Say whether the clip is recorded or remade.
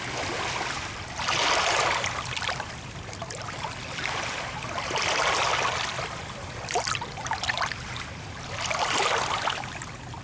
recorded